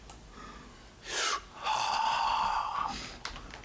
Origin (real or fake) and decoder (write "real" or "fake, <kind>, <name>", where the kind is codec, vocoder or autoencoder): real